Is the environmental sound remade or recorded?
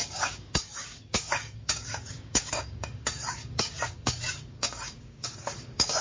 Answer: remade